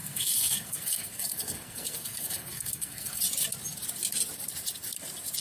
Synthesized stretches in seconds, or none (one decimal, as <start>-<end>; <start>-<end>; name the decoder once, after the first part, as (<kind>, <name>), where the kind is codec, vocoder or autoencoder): 0.0-3.2 (codec, SNAC)